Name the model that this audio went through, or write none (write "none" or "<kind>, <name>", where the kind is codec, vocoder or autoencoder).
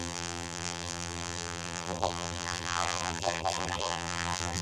vocoder, BigVGAN v2